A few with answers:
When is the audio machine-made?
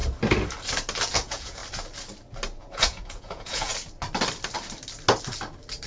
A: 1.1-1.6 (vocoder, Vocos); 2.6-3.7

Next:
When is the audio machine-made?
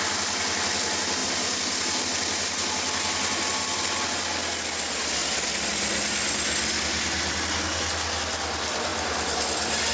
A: none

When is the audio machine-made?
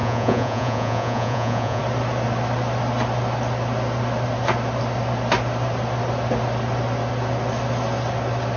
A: 0.0-1.8 (vocoder, Vocos)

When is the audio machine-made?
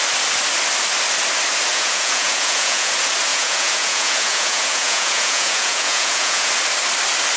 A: 1.7-2.9 (vocoder, Vocos); 3.3-6.5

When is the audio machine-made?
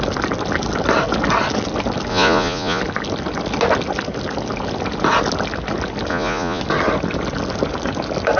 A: 2.1-2.8 (vocoder, Vocos); 6.1-6.6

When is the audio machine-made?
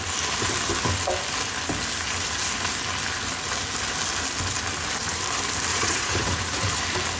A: 5.7-6.7 (vocoder, Vocos)